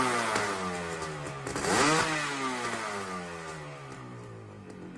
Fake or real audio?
real